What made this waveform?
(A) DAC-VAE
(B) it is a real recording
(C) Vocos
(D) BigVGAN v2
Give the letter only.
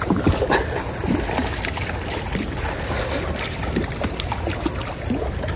B